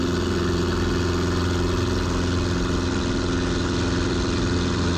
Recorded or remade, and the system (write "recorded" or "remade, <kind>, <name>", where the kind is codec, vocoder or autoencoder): recorded